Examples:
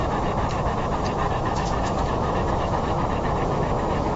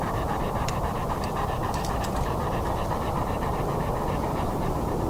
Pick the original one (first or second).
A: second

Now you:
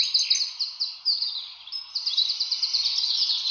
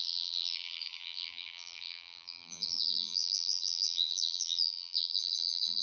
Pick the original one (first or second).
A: first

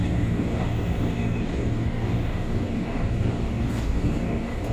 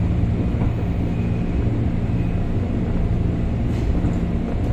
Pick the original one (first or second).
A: second